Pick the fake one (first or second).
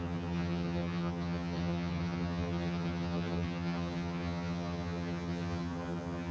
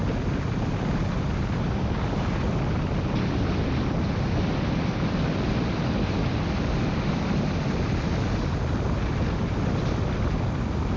first